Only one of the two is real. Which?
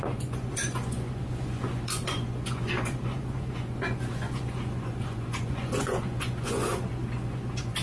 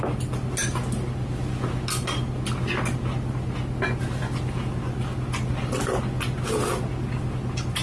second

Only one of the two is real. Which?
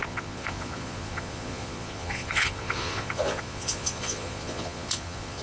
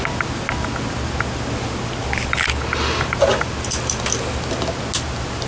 second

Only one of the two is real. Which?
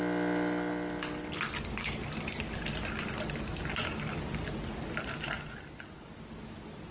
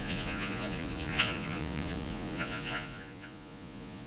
first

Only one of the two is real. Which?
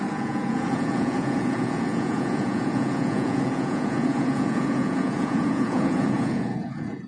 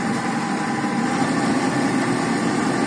second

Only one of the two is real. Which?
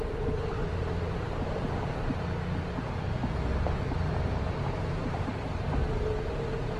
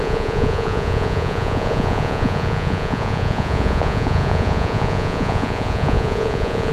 first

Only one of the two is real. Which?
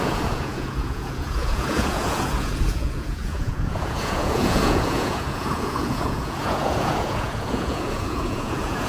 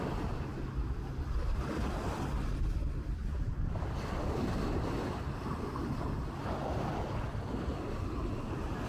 second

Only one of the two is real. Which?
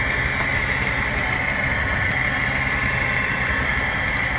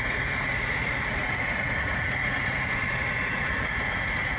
first